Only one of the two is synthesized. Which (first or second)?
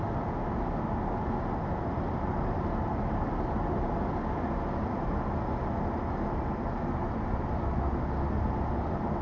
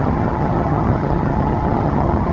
second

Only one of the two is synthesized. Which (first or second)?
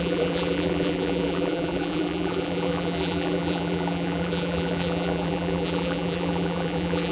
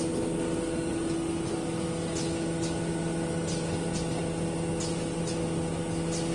first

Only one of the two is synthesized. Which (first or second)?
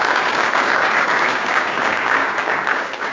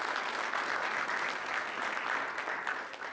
first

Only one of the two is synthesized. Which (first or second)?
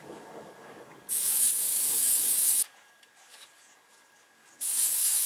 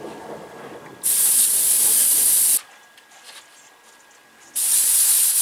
first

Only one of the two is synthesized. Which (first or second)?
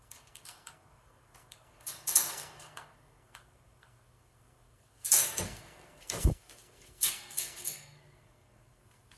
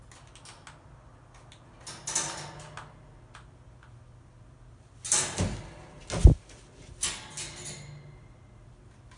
first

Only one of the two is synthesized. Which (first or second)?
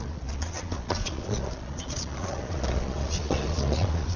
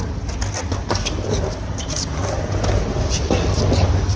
first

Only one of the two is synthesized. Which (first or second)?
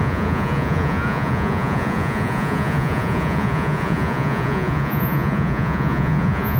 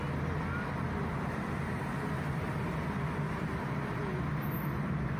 first